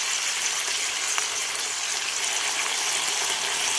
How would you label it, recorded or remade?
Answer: recorded